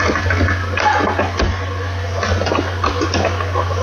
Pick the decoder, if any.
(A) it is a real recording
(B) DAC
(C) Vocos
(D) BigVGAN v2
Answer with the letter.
A